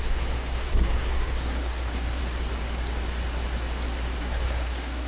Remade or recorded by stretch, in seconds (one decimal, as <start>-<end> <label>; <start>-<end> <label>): 0.0-2.2 remade; 2.2-4.2 recorded; 4.2-5.1 remade